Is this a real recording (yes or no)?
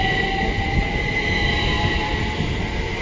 yes